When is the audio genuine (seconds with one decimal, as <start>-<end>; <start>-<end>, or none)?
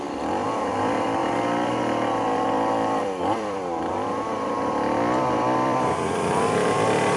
none